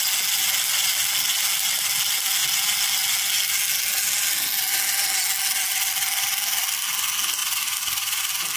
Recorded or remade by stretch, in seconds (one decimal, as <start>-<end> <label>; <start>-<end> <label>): 0.0-7.4 recorded; 7.4-8.2 remade; 8.2-8.6 recorded